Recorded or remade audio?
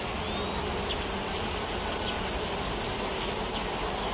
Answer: recorded